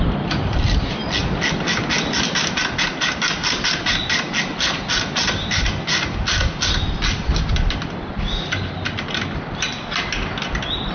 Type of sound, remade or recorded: recorded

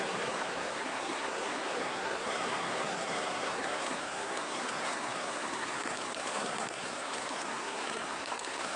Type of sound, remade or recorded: remade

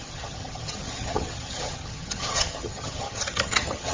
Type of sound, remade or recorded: remade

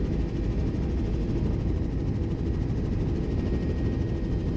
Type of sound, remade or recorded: recorded